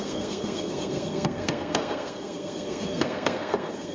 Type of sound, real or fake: fake